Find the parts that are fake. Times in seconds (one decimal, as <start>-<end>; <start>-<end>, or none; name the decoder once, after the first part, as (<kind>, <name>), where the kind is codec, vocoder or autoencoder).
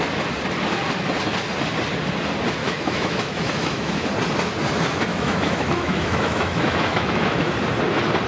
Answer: 2.6-4.1 (autoencoder, DAC-VAE); 5.1-7.5